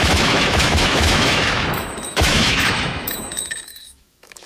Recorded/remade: remade